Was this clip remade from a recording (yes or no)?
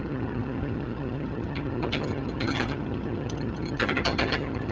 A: yes